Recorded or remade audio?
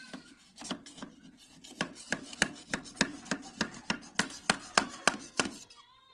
recorded